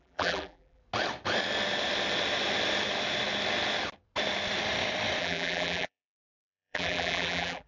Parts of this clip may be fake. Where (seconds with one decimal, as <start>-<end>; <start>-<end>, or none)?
0.0-0.8; 5.2-7.7